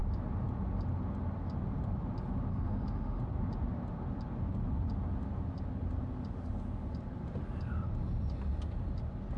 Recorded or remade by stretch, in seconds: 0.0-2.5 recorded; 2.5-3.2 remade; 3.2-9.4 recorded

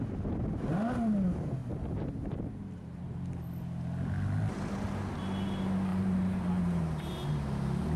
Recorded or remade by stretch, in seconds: 0.0-1.6 recorded; 1.6-3.5 remade; 3.5-5.9 recorded; 5.9-7.3 remade; 7.3-8.0 recorded

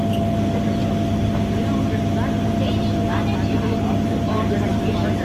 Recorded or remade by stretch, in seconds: 0.0-5.2 recorded

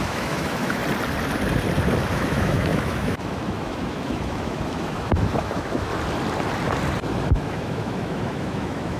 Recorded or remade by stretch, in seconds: 0.0-0.8 remade; 0.8-2.1 recorded; 2.1-5.9 remade; 5.9-7.3 recorded; 7.3-9.0 remade